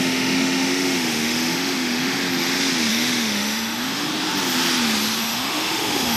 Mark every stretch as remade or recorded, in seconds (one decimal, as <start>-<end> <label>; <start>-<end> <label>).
0.0-2.2 remade; 2.2-2.9 recorded; 2.9-4.1 remade; 4.1-5.2 recorded; 5.2-6.2 remade